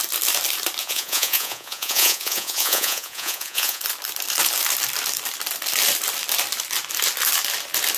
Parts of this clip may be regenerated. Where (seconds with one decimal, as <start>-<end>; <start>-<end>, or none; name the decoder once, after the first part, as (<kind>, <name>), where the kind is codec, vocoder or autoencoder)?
0.8-3.8 (vocoder, Vocos)